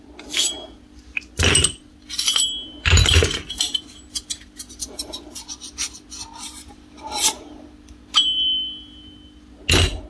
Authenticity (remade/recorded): recorded